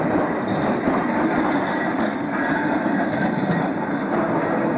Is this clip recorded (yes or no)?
yes